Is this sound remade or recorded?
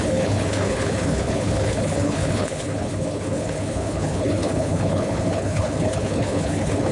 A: remade